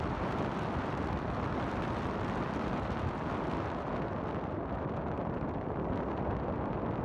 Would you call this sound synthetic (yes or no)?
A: no